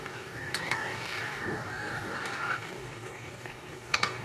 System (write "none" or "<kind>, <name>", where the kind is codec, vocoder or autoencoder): codec, DAC